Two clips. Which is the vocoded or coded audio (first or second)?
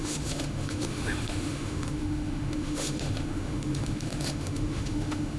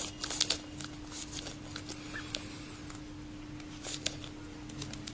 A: first